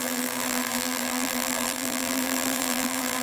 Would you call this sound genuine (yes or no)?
no